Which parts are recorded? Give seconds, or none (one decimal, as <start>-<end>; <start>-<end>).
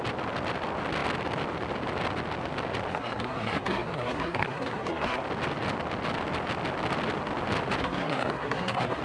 0.0-2.9; 5.2-7.8